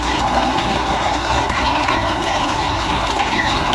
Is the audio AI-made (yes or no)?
yes